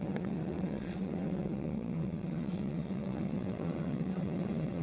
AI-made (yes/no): yes